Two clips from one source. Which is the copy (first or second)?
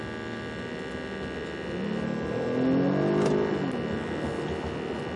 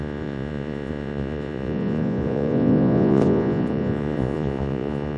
second